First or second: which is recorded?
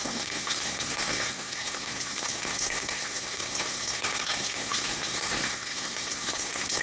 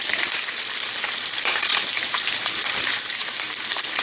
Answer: second